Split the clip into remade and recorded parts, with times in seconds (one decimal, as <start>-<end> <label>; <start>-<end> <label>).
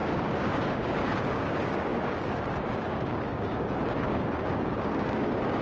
0.0-5.6 remade